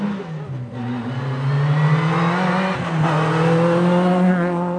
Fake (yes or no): no